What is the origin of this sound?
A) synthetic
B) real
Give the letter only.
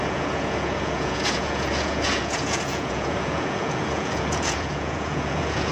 A